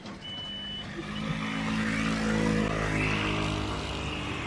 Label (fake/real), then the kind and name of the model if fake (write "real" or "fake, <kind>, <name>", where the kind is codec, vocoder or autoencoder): real